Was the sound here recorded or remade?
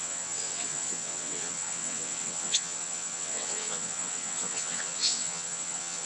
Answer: remade